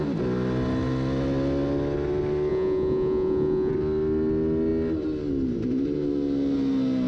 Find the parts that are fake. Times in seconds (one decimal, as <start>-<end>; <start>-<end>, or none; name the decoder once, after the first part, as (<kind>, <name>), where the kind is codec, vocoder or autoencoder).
2.5-3.7 (vocoder, Vocos)